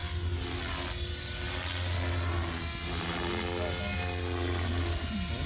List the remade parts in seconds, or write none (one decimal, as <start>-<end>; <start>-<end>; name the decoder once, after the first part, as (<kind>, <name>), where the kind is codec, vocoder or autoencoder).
none